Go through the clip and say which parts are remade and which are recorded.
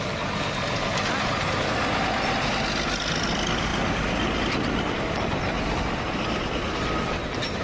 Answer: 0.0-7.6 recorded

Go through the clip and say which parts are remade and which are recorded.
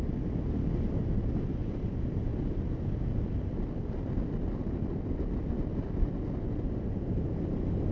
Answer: 0.0-7.9 recorded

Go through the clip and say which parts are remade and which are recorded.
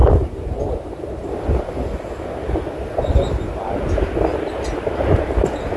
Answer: 0.0-5.8 recorded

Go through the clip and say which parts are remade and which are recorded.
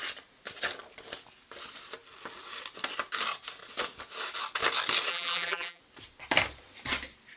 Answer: 0.0-5.1 recorded; 5.1-5.8 remade; 5.8-7.4 recorded